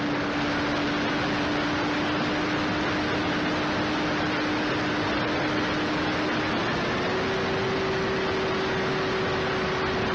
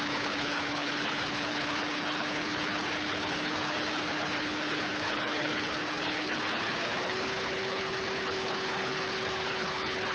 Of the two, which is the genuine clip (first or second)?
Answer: first